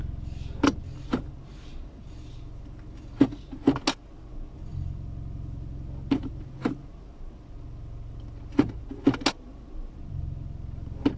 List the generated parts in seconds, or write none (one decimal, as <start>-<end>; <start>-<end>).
none